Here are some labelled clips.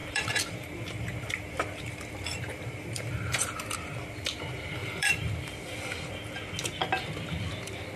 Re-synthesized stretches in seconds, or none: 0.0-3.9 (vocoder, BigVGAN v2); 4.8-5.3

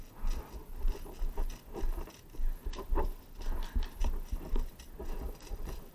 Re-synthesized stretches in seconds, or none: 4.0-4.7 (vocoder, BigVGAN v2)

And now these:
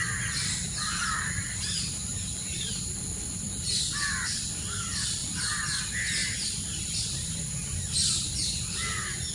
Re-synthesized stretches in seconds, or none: 2.3-3.8 (vocoder, BigVGAN v2); 5.2-5.8

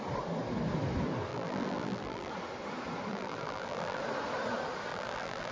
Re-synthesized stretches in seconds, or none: 1.3-2.3 (vocoder, BigVGAN v2); 3.1-4.0; 4.9-5.5

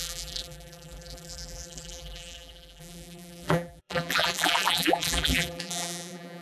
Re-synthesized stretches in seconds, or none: 0.0-6.4 (vocoder, BigVGAN v2)

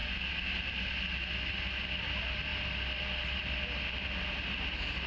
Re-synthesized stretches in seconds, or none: none